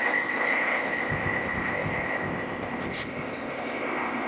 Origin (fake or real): fake